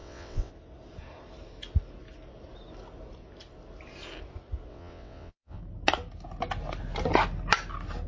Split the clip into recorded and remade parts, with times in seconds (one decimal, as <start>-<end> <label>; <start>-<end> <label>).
0.0-0.5 remade; 0.5-4.7 recorded; 4.7-5.6 remade; 5.6-8.1 recorded